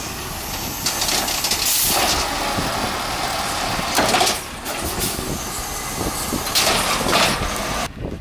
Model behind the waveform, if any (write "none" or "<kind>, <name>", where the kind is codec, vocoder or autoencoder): none